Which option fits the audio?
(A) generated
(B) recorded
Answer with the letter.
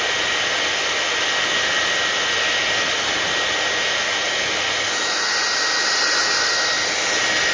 B